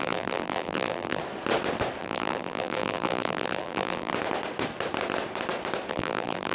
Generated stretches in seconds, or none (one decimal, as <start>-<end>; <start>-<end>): 0.0-1.2; 2.0-4.1; 5.9-6.5